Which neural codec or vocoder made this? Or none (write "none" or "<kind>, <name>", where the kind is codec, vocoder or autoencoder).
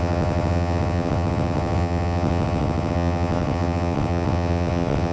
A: vocoder, WaveNeXt